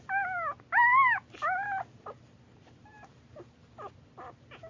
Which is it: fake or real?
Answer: real